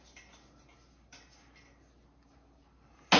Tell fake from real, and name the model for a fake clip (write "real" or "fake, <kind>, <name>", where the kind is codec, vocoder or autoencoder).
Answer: real